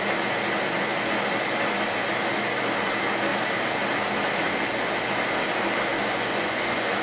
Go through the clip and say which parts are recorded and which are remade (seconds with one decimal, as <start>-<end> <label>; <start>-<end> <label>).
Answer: 0.0-6.0 recorded; 6.0-7.0 remade